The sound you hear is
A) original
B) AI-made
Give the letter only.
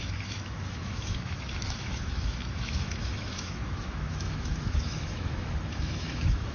B